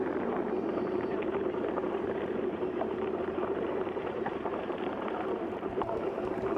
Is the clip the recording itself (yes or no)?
no